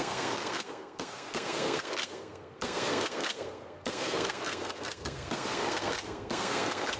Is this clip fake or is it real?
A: fake